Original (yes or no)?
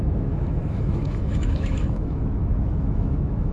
no